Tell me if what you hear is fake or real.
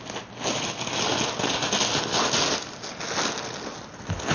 real